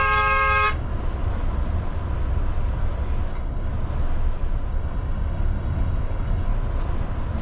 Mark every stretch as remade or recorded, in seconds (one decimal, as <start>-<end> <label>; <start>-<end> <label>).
0.0-0.9 remade; 0.9-3.3 recorded; 3.3-3.7 remade; 3.7-4.7 recorded; 4.7-6.5 remade; 6.5-7.4 recorded